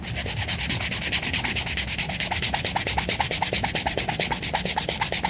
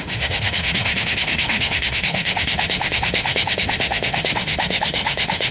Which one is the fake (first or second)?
second